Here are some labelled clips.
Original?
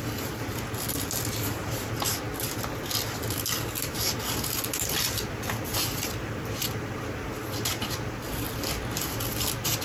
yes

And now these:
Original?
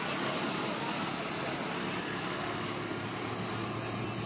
yes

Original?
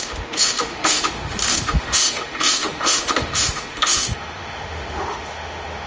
no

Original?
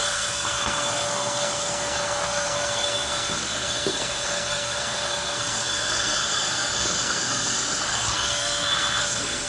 no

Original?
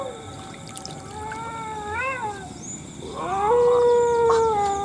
yes